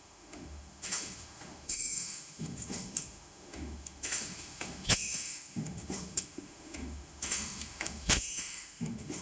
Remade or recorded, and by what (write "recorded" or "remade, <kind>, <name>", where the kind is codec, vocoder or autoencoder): remade, autoencoder, DAC-VAE